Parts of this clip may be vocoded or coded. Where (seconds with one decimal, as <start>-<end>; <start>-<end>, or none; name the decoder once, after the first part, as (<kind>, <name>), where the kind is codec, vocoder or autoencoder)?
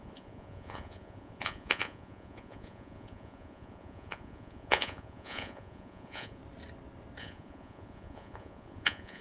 0.0-6.4 (vocoder, Vocos); 7.2-9.2